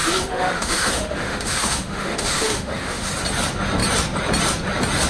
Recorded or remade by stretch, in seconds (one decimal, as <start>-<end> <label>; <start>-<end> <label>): 0.0-3.1 remade; 3.1-5.1 recorded